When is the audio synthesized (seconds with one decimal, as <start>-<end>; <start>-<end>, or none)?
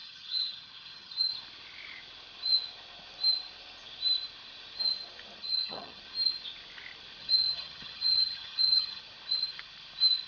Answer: 0.0-1.3; 5.4-6.0; 7.2-9.0